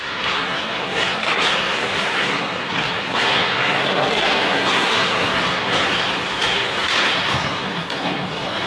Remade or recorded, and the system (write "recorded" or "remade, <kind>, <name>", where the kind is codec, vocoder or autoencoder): remade, codec, SNAC